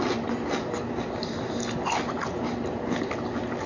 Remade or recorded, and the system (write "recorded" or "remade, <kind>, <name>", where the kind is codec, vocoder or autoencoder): recorded